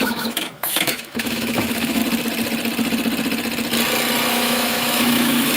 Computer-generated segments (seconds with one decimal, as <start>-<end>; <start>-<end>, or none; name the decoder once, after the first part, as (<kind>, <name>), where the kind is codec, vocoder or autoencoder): 0.0-2.0 (autoencoder, DAC-VAE); 4.3-5.6